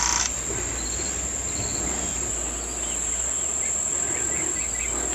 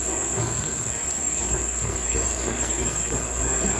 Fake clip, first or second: second